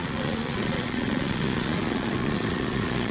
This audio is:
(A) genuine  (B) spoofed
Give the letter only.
B